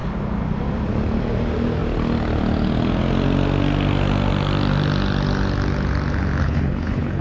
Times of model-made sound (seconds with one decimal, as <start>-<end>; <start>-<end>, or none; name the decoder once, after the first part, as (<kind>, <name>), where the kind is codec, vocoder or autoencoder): 6.4-7.2 (codec, HILCodec)